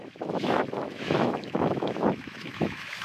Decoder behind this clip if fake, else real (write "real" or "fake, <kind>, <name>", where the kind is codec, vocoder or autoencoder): fake, autoencoder, DAC-VAE